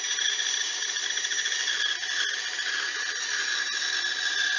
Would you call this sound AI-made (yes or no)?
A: no